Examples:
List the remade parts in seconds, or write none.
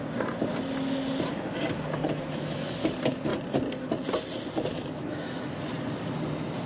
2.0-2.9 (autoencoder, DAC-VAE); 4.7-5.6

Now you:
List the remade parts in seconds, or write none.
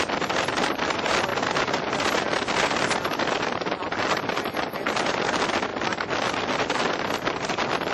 none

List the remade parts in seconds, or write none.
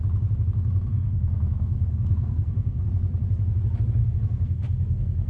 0.9-2.9 (codec, SNAC); 4.0-5.3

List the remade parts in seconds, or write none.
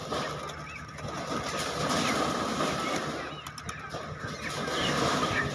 none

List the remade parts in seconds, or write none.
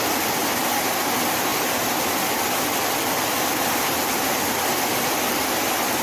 0.4-1.0 (vocoder, BigVGAN v2); 1.5-5.1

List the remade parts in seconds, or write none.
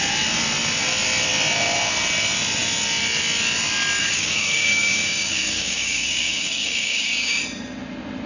4.0-7.4 (codec, DAC)